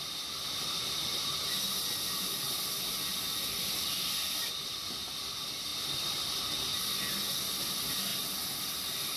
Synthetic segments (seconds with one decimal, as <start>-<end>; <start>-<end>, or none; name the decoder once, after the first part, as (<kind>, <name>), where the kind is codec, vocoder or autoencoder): 5.7-6.4 (vocoder, BigVGAN v2)